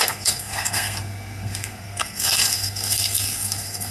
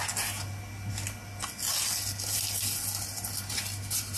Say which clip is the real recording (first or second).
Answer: second